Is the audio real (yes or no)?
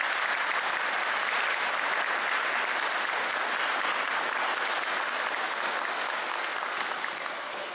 yes